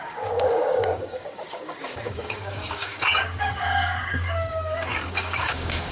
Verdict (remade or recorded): remade